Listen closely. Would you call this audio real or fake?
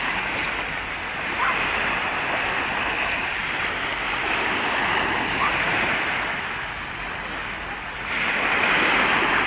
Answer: real